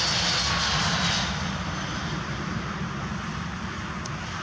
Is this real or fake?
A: real